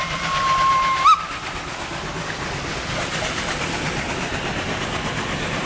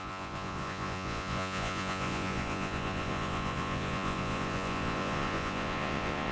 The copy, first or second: second